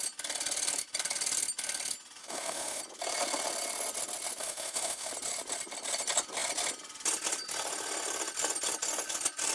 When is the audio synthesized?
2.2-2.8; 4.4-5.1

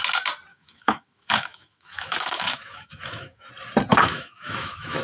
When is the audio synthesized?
0.5-3.5; 3.9-5.0

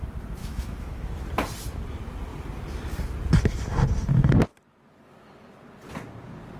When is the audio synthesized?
0.4-1.1

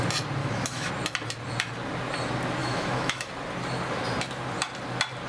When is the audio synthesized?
0.4-0.9; 2.6-3.3

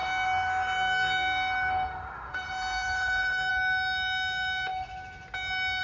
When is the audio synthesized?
0.0-3.5

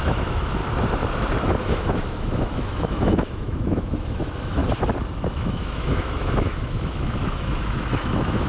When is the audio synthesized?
0.0-0.6; 1.6-4.6; 5.3-8.5